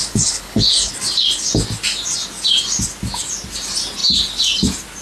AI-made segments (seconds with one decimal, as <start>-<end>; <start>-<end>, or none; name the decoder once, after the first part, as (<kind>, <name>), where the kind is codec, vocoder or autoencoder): 0.0-0.9 (codec, HILCodec)